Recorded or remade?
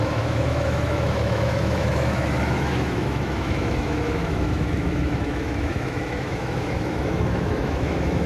remade